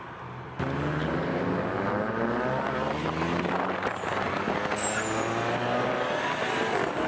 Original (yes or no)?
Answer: yes